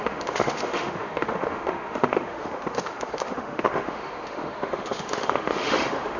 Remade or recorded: remade